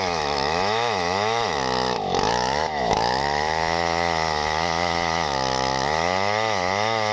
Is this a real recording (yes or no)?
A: no